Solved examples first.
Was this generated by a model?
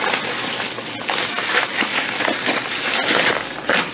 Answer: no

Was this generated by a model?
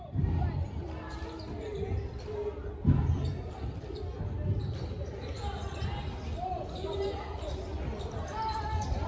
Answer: no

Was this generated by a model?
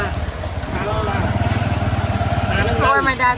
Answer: no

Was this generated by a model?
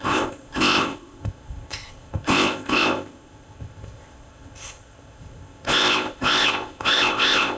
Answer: yes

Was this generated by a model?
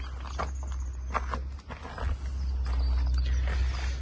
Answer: no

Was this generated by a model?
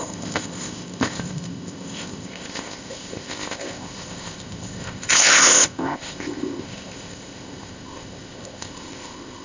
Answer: yes